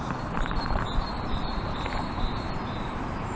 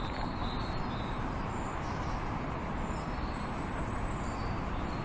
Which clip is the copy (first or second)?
first